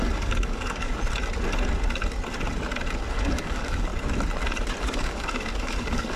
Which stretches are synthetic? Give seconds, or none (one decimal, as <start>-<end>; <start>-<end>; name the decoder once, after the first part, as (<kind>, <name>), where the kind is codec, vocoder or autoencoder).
0.0-0.9 (codec, DAC); 3.1-3.9; 4.8-6.2